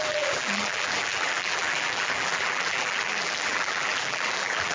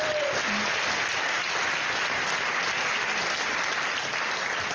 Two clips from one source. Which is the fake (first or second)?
first